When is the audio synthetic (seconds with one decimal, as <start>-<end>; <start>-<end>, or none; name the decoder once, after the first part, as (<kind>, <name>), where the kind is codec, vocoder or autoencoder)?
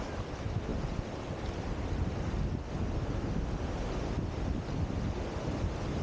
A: none